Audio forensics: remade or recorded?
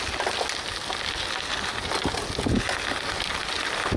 recorded